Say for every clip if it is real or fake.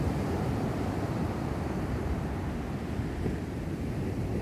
real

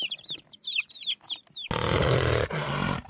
real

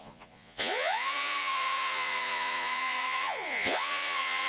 fake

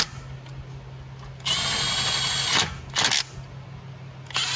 real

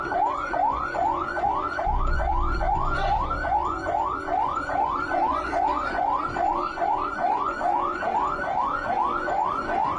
fake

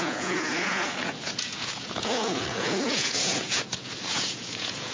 fake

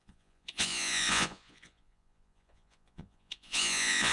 fake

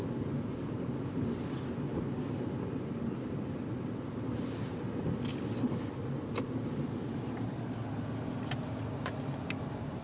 real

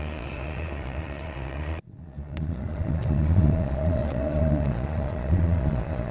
fake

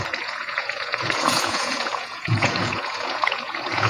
fake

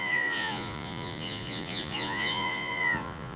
fake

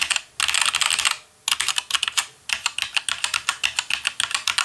real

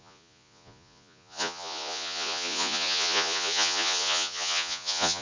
fake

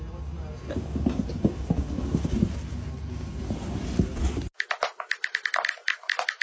real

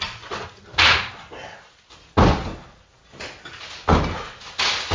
real